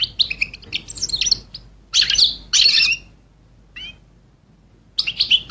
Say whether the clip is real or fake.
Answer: real